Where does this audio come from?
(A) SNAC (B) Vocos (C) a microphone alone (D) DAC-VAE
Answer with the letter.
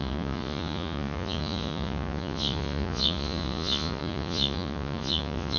B